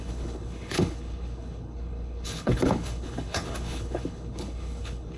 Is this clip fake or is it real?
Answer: fake